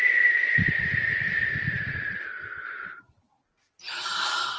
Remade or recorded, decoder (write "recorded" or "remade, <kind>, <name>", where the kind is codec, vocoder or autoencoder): recorded